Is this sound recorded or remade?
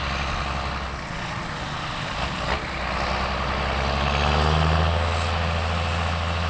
recorded